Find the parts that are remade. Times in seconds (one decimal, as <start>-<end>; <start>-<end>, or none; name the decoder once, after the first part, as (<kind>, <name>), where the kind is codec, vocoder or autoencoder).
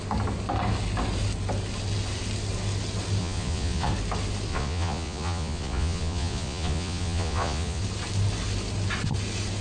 3.2-3.9 (vocoder, Vocos); 4.5-7.8